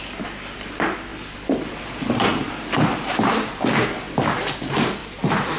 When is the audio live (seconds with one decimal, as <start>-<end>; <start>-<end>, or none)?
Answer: 0.0-5.6